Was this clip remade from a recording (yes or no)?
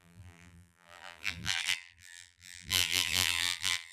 yes